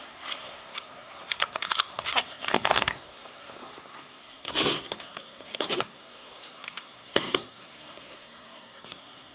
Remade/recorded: remade